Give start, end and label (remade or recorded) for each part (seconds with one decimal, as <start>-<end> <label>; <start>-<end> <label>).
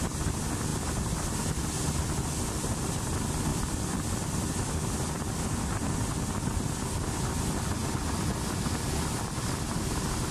0.0-3.5 recorded; 3.5-4.7 remade; 4.7-7.8 recorded; 7.8-10.3 remade